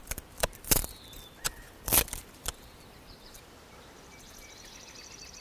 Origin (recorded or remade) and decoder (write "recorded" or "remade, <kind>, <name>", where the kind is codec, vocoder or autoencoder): remade, vocoder, BigVGAN v2